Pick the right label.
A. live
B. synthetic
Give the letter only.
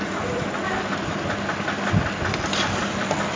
A